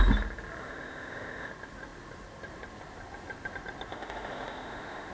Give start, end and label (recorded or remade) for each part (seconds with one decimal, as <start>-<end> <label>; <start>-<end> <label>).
0.0-0.6 recorded; 0.6-1.5 remade; 1.5-3.9 recorded; 3.9-5.1 remade